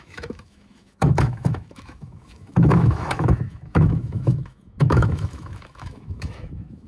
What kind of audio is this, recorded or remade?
remade